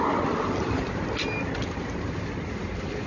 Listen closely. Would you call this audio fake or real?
real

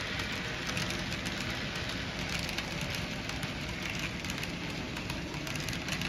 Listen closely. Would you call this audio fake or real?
real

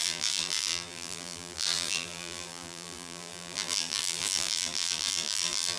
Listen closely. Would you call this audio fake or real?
fake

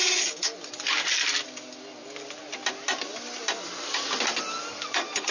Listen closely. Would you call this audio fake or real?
real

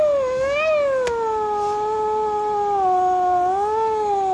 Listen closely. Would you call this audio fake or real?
real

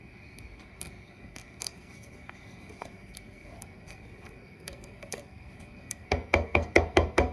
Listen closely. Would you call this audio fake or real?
fake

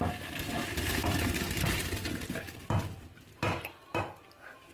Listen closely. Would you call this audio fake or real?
real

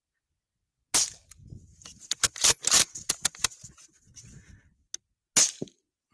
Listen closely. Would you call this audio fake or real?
real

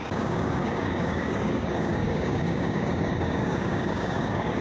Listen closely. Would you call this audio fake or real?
fake